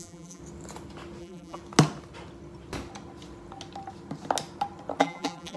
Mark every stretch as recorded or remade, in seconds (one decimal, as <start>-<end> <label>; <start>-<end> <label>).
0.0-0.4 remade; 0.4-1.2 recorded; 1.2-1.6 remade; 1.6-5.0 recorded; 5.0-5.6 remade